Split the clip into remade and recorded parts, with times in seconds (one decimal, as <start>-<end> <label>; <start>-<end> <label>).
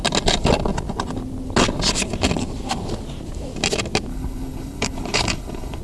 0.0-4.1 recorded; 4.1-5.8 remade